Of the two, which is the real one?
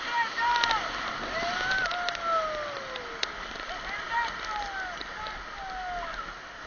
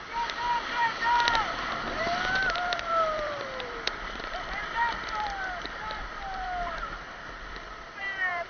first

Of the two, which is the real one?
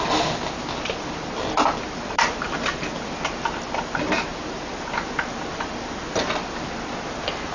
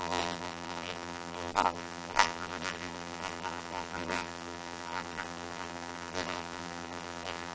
first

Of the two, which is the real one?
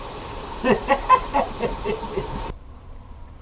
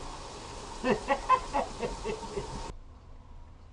second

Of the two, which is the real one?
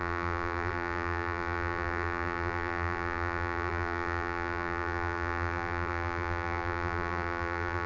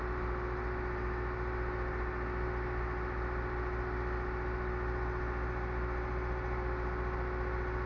second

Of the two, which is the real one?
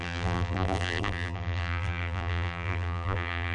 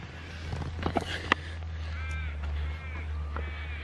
second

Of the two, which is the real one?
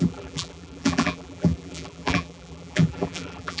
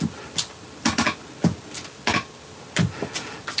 second